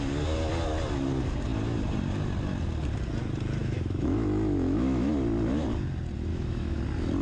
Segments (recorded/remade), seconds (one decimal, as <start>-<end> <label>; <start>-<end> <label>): 0.0-3.6 recorded; 3.6-5.1 remade; 5.1-6.3 recorded; 6.3-6.8 remade; 6.8-7.2 recorded